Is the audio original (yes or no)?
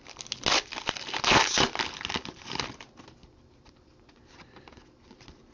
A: yes